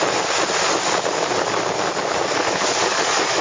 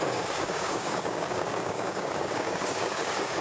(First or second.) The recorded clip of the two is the first